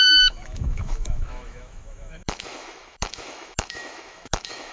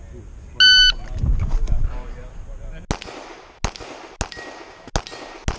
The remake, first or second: first